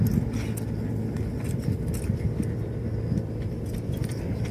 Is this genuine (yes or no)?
yes